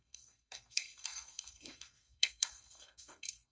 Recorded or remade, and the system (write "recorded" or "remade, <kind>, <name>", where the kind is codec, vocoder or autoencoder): remade, codec, SNAC